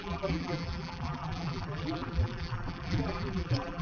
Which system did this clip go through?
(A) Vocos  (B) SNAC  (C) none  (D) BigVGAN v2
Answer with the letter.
D